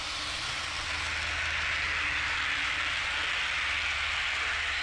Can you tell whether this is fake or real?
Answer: real